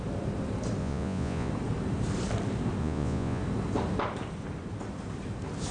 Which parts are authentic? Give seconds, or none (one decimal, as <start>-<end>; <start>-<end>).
0.0-0.8; 1.5-2.8; 3.4-5.7